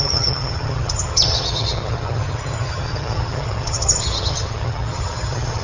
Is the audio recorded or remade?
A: remade